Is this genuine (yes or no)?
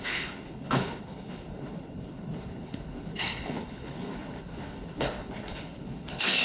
no